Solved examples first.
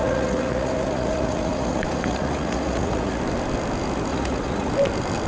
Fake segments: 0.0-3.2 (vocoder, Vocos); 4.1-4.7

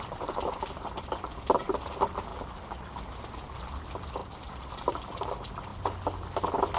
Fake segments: 4.2-4.7 (vocoder, BigVGAN v2)

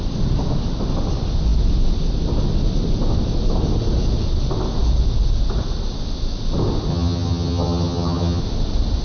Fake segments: 6.9-8.4 (vocoder, HiFi-GAN)